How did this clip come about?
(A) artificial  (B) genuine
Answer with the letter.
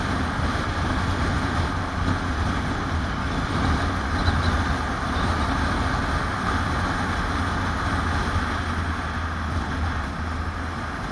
B